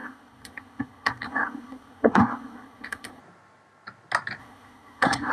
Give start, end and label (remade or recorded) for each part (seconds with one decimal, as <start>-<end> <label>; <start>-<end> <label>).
0.0-3.2 remade; 3.2-4.4 recorded; 4.4-5.3 remade